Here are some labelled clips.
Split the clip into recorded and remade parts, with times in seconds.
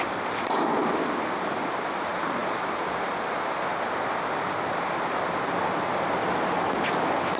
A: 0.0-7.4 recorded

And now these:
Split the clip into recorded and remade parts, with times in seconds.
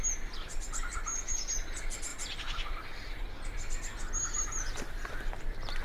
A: 0.0-0.9 recorded; 0.9-1.7 remade; 1.7-2.1 recorded; 2.1-3.2 remade; 3.2-5.8 recorded